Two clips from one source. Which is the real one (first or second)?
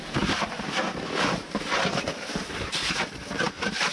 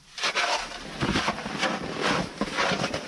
second